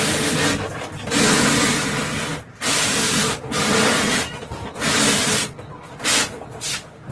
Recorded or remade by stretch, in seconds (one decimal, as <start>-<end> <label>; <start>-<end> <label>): 0.0-7.1 recorded